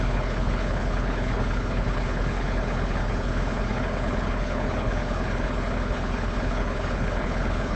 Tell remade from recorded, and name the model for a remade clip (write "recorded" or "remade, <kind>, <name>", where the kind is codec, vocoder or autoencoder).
remade, codec, HILCodec